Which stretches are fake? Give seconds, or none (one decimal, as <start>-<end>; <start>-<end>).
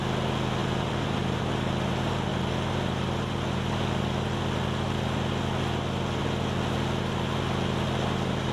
0.6-1.4